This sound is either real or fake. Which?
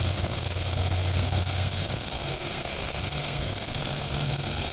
fake